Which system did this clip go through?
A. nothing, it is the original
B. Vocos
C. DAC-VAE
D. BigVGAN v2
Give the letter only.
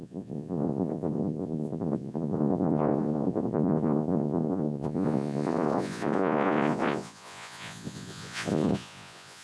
B